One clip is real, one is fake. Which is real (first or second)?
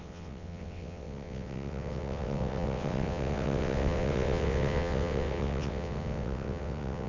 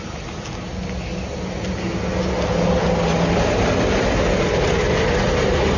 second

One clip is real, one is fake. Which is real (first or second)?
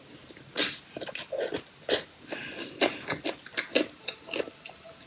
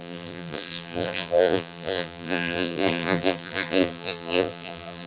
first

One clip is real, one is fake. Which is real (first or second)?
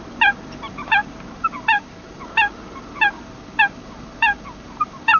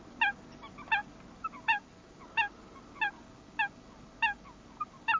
second